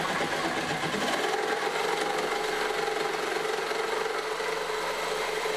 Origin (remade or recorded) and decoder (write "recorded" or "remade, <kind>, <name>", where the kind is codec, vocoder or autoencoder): recorded